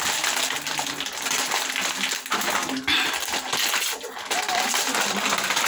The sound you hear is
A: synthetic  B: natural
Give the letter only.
B